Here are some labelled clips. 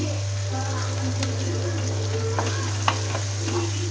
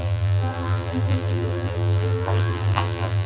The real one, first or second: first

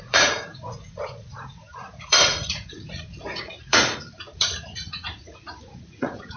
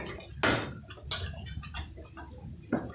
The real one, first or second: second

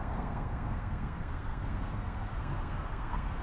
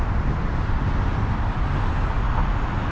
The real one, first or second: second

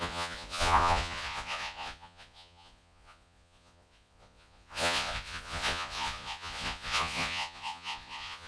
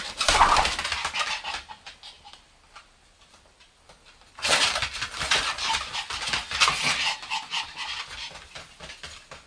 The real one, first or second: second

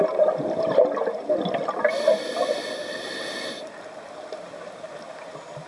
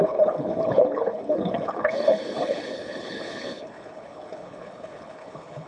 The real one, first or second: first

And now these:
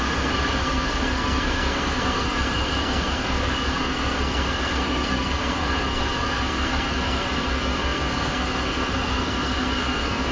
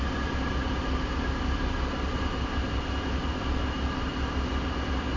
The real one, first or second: second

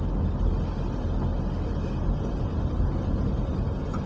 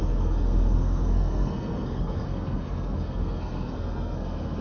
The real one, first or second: first